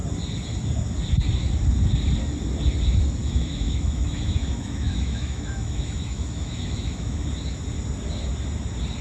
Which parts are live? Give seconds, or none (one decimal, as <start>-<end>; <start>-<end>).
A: 0.0-3.2; 7.3-9.0